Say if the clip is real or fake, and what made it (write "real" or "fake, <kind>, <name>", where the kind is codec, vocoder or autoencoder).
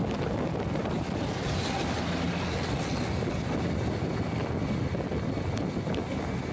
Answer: real